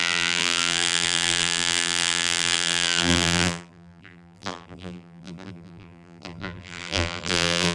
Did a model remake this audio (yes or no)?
yes